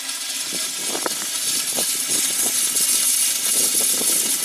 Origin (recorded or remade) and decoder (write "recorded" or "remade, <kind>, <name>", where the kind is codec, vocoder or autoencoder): recorded